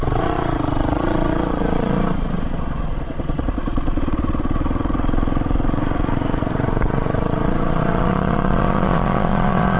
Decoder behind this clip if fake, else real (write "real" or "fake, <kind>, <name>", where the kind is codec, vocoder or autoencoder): fake, vocoder, Vocos